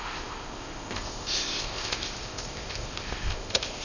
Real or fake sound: fake